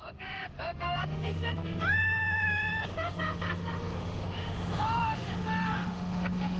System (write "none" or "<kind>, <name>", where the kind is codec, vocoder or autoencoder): autoencoder, DAC-VAE